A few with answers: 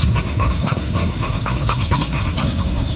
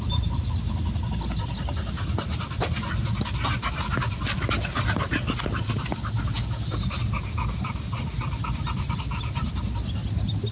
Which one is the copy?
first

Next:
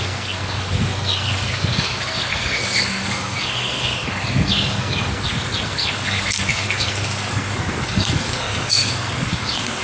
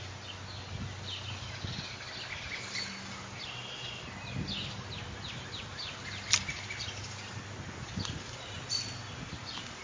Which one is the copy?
first